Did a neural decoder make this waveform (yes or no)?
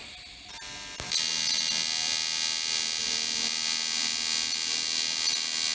no